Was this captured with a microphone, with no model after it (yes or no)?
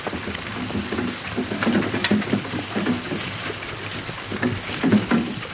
no